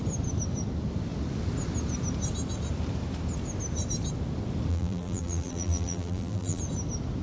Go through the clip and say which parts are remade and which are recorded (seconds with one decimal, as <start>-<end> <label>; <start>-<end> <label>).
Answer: 0.0-4.7 recorded; 4.7-6.6 remade; 6.6-7.2 recorded